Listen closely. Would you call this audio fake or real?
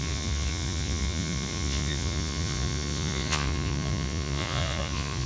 fake